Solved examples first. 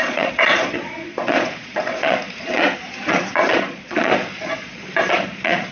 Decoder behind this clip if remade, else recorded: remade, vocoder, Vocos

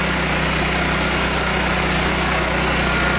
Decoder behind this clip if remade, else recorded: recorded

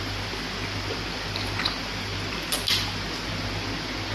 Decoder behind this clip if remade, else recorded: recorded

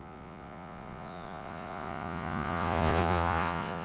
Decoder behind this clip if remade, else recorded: remade, vocoder, Vocos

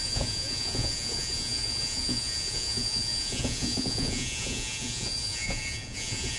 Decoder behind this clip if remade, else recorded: remade, vocoder, Vocos